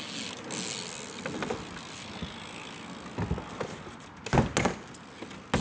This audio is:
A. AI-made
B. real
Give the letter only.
B